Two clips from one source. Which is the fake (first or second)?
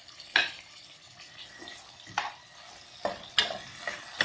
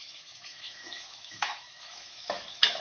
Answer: second